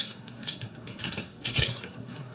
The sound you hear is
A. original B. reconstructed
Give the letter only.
B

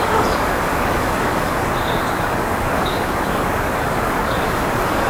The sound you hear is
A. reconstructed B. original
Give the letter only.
A